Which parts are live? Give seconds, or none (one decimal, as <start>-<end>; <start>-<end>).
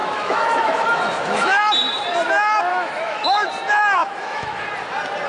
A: 1.6-2.7; 3.5-4.0; 4.6-5.3